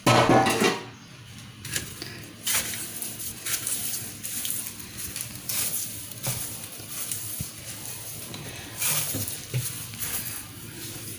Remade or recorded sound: recorded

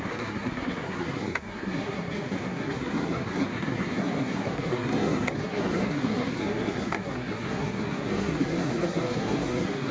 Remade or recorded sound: remade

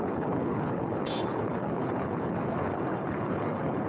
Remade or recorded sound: remade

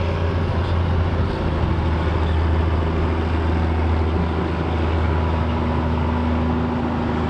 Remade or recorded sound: recorded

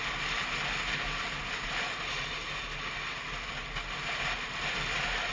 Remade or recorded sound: recorded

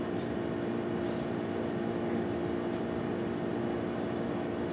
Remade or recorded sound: recorded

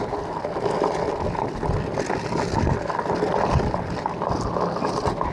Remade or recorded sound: recorded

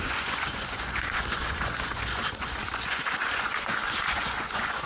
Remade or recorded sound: remade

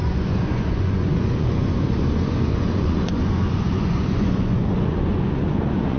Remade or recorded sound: remade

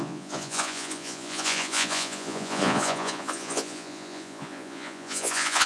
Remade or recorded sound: remade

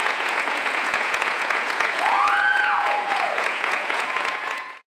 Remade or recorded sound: remade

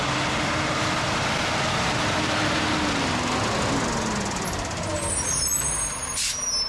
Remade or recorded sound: recorded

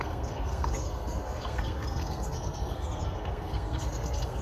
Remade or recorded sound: remade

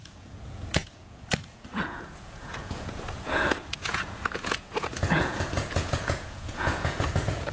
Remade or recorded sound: remade